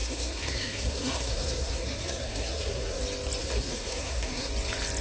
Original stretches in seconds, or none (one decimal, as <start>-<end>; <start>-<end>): 3.0-3.4; 4.5-5.0